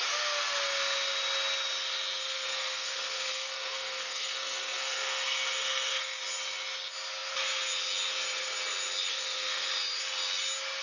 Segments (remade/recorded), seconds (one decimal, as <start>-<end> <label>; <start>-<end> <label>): 0.0-2.2 recorded; 2.2-6.2 remade; 6.2-9.1 recorded; 9.1-9.7 remade; 9.7-10.8 recorded